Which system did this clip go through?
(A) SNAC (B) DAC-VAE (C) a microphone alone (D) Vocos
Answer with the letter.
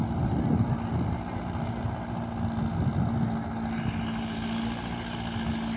C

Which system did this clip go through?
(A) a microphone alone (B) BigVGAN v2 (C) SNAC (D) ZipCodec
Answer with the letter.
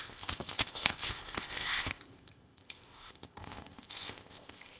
D